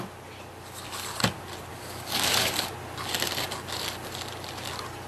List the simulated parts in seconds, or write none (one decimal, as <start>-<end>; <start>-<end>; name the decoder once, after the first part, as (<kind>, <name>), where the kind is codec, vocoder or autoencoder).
1.7-2.7 (codec, DAC)